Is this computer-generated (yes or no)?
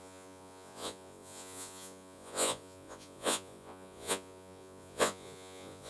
yes